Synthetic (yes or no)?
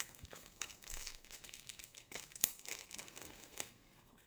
yes